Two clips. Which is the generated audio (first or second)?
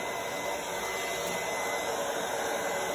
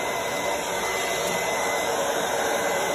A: second